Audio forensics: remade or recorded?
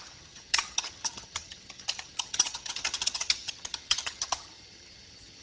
remade